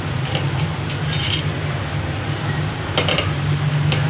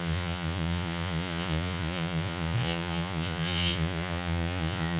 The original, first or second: first